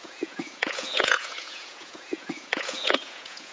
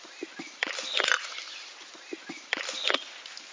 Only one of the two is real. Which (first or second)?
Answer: second